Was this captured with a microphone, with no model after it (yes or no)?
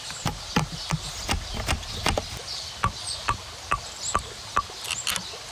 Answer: yes